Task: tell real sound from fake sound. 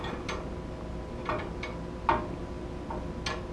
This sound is real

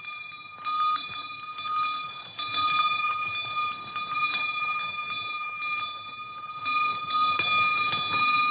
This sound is real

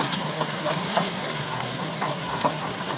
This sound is fake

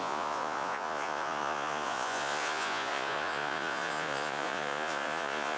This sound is fake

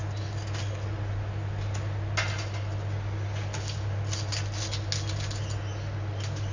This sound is real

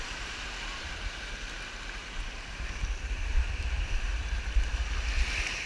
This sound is fake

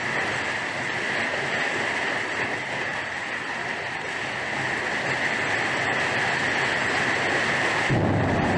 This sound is real